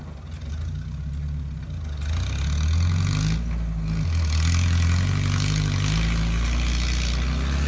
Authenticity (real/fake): real